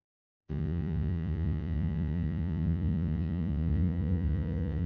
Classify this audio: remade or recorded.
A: remade